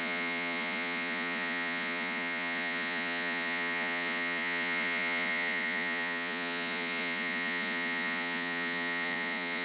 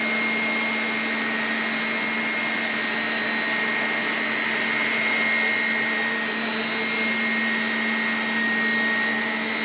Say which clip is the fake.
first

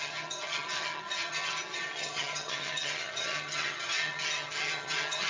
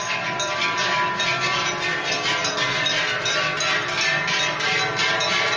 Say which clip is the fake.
first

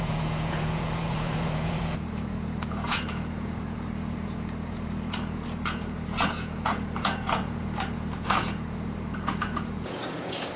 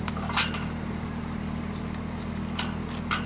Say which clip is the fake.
first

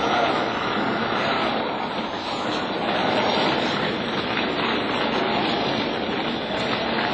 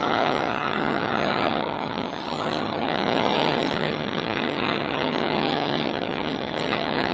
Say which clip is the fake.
second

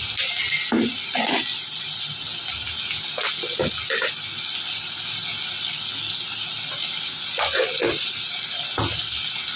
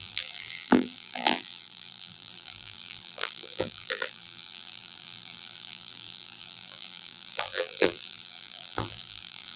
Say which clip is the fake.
second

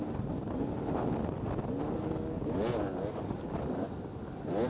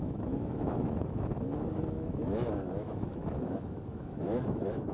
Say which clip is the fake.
second